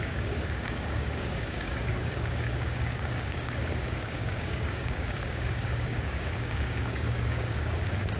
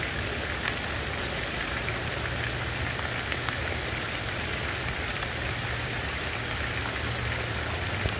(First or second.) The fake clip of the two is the first